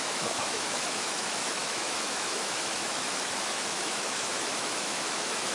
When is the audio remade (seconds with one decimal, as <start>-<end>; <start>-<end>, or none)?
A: 0.0-5.5